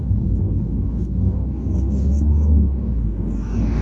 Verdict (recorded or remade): remade